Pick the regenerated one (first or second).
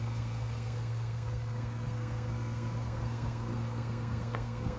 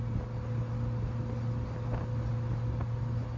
first